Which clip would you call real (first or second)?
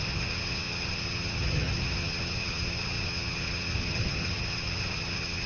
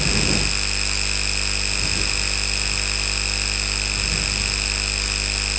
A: second